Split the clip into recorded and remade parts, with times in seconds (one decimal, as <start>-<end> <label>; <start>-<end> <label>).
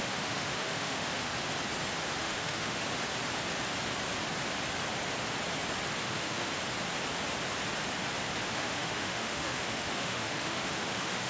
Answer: 0.0-1.3 remade; 1.3-2.2 recorded; 2.2-2.8 remade; 2.8-6.0 recorded; 6.0-6.5 remade; 6.5-8.5 recorded; 8.5-11.3 remade